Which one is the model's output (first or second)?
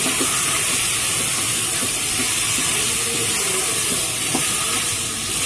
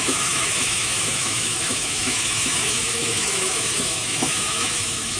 second